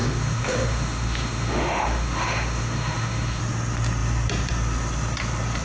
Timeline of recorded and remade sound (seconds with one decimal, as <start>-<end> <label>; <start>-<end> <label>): 0.0-3.4 remade; 3.4-5.6 recorded